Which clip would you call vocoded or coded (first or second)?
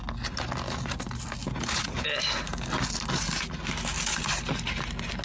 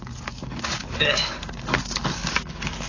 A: second